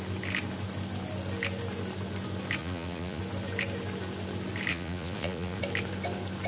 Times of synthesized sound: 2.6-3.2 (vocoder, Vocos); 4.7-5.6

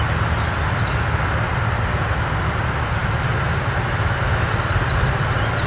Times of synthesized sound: none

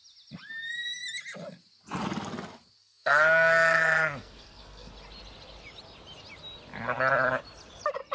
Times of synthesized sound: 2.8-4.9 (codec, SNAC)

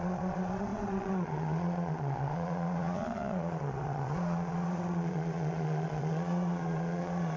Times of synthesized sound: 0.0-7.4 (vocoder, Vocos)

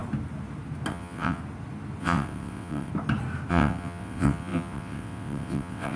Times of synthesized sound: 0.9-1.4 (vocoder, WaveNeXt); 2.0-2.9; 3.5-6.0